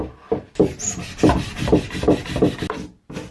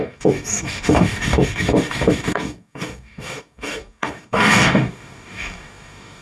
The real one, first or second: first